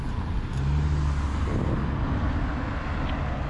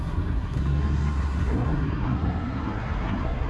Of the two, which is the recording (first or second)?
first